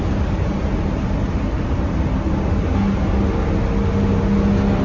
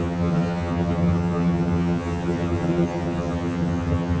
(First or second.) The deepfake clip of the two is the second